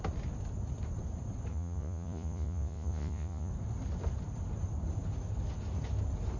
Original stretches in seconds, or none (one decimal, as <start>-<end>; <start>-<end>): 0.0-1.5; 3.5-6.4